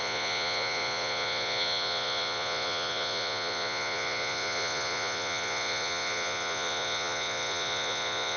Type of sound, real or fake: fake